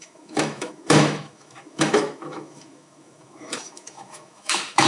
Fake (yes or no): yes